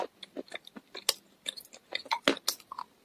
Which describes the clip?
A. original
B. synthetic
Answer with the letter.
A